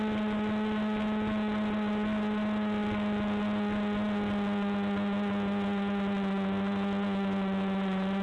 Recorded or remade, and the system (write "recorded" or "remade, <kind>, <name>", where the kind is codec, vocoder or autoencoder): recorded